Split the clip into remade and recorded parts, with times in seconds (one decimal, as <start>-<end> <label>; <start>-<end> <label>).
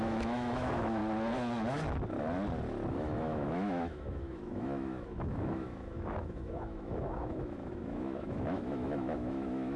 0.0-1.0 remade; 1.0-2.9 recorded; 2.9-9.8 remade